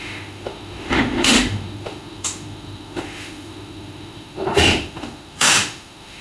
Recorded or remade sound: remade